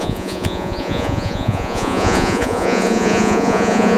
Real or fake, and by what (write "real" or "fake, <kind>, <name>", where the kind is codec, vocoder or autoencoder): fake, vocoder, Vocos